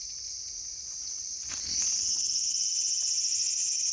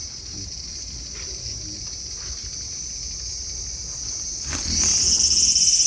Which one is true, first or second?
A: second